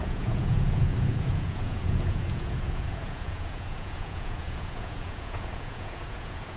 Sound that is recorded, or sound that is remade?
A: remade